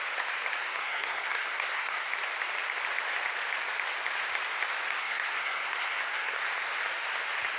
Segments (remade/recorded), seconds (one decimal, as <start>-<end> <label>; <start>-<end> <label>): 0.0-0.6 recorded; 0.6-2.1 remade; 2.1-5.0 recorded; 5.0-6.4 remade; 6.4-7.6 recorded